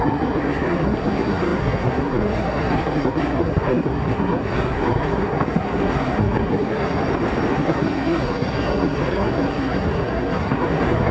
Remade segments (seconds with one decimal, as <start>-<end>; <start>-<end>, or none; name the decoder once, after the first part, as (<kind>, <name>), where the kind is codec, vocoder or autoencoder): 0.0-7.0 (codec, SNAC); 7.5-11.1